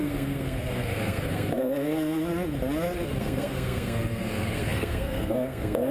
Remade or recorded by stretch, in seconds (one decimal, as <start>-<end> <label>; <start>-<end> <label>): 0.0-2.3 remade; 2.3-3.2 recorded; 3.2-5.9 remade